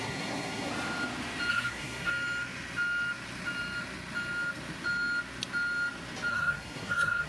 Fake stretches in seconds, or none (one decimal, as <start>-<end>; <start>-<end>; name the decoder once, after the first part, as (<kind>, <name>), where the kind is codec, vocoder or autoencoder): 0.0-0.7 (codec, SNAC); 1.5-2.1; 6.3-7.3